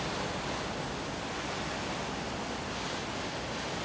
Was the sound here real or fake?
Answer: real